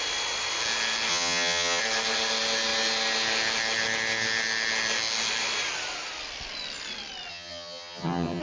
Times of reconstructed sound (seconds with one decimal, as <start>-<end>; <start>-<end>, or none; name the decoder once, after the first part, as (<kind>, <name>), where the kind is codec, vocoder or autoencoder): 1.1-1.8 (vocoder, HiFi-GAN); 7.3-8.4